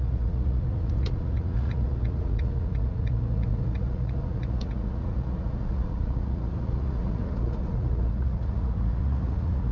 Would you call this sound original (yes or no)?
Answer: no